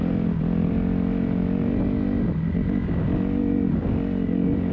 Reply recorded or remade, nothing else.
recorded